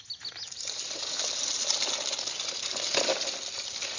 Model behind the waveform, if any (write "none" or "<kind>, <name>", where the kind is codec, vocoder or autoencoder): none